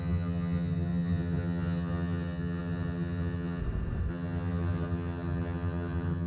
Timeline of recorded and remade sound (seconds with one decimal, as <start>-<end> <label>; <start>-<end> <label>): 0.0-3.6 remade; 3.6-4.1 recorded; 4.1-6.3 remade

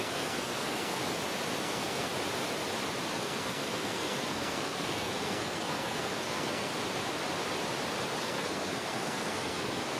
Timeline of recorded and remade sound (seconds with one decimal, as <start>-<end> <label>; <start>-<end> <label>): 0.0-1.0 remade; 1.0-1.6 recorded; 1.6-2.1 remade; 2.1-3.1 recorded; 3.1-6.7 remade; 6.7-8.2 recorded; 8.2-10.0 remade

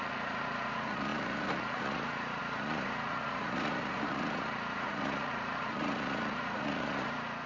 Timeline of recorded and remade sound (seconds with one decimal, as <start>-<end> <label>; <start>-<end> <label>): 0.0-7.5 remade

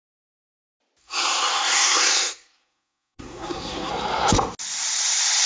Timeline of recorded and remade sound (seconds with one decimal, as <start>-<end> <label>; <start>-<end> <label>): 0.0-1.0 recorded; 1.0-3.9 remade; 3.9-5.5 recorded

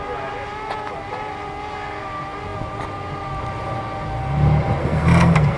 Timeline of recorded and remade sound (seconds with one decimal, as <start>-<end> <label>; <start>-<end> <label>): 0.0-4.8 recorded; 4.8-5.6 remade

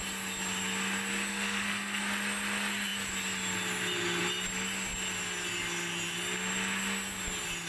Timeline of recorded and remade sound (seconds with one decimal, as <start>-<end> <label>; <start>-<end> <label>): 0.0-1.3 recorded; 1.3-2.0 remade; 2.0-7.7 recorded

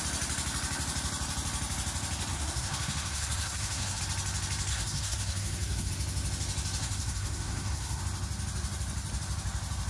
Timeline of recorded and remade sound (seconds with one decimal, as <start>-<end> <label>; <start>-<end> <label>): 0.0-2.3 recorded; 2.3-4.0 remade; 4.0-4.7 recorded; 4.7-5.9 remade; 5.9-6.8 recorded; 6.8-8.0 remade; 8.0-9.9 recorded

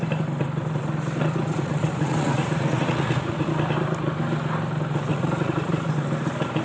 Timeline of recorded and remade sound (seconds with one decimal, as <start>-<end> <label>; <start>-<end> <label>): 0.0-1.5 recorded; 1.5-3.5 remade; 3.5-5.1 recorded; 5.1-5.9 remade; 5.9-6.6 recorded